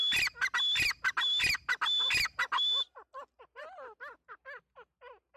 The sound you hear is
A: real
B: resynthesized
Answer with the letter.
A